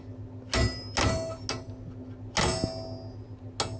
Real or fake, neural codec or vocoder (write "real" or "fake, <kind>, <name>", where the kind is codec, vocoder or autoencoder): real